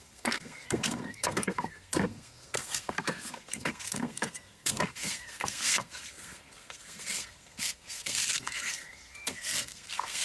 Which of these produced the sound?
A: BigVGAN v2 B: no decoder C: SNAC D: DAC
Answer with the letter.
C